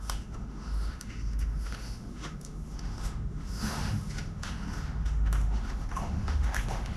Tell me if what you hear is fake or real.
fake